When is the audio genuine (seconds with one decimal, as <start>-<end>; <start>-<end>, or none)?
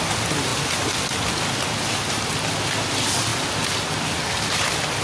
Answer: 0.0-5.0